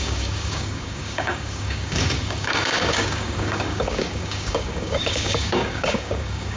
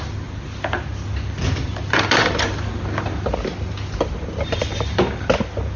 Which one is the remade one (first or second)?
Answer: first